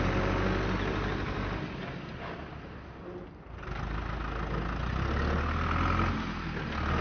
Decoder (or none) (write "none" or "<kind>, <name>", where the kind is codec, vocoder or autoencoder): none